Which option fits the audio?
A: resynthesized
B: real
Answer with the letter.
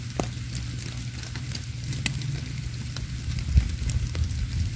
B